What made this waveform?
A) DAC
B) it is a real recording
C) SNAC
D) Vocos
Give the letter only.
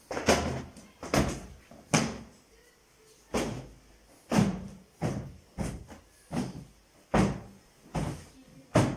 B